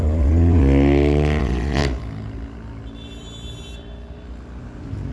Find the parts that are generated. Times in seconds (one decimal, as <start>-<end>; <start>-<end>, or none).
0.0-0.6; 1.4-1.8